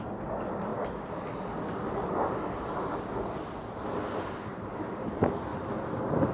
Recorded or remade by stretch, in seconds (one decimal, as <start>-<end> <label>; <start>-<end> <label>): 0.0-6.3 recorded

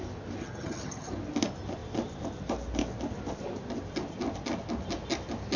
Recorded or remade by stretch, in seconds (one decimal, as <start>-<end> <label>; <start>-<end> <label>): 0.0-0.4 recorded; 0.4-1.1 remade; 1.1-5.6 recorded